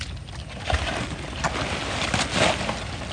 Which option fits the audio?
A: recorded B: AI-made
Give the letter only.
A